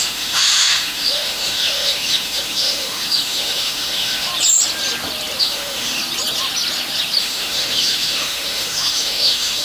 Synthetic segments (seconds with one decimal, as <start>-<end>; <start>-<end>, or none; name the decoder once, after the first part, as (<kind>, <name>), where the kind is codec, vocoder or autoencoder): 0.0-4.3 (autoencoder, DAC-VAE); 5.4-6.0; 7.2-9.6